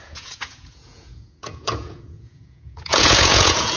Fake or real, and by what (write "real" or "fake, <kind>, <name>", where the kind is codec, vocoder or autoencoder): fake, vocoder, Vocos